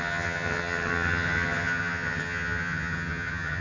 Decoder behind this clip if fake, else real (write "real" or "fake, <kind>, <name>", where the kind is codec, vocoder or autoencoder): fake, vocoder, HiFi-GAN